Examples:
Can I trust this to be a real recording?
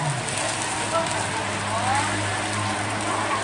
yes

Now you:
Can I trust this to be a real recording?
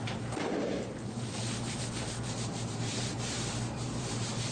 no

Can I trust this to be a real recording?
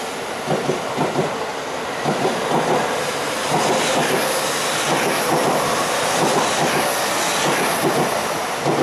yes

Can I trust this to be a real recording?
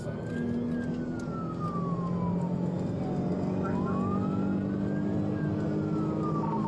yes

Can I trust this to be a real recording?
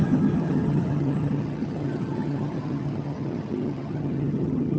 no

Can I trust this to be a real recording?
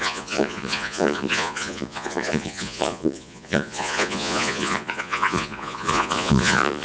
no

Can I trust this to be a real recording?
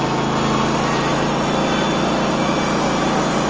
yes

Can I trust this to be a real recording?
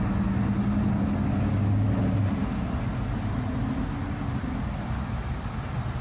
yes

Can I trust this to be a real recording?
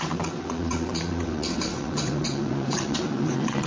no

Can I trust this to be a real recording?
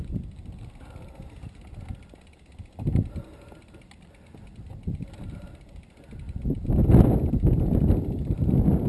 yes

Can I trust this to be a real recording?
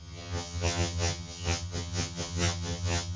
no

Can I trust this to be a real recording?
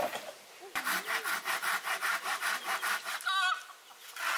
yes